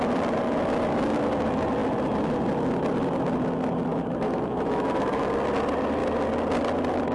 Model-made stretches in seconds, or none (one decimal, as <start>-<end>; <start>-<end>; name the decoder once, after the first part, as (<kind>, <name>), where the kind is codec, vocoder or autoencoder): 3.9-5.2 (autoencoder, DAC-VAE)